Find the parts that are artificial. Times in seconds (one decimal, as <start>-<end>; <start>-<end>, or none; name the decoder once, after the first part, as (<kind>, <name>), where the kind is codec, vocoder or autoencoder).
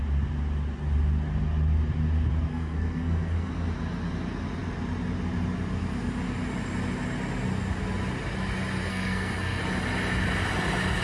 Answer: 2.5-3.5 (codec, SNAC); 8.9-9.6